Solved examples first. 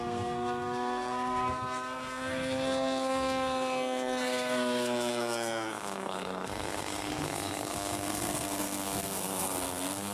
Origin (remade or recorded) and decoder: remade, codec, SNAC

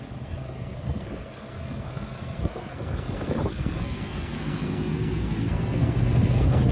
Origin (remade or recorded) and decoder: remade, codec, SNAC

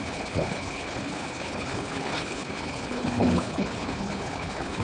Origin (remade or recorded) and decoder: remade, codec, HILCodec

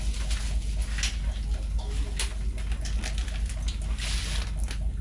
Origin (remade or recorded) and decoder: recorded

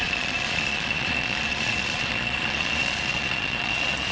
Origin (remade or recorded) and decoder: remade, vocoder, Vocos